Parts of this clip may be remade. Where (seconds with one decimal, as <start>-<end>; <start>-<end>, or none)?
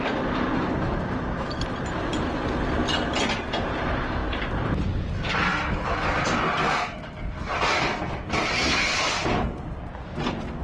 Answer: none